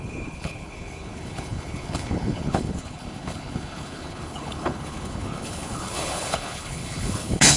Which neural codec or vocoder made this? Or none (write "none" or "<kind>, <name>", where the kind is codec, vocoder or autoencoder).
codec, HILCodec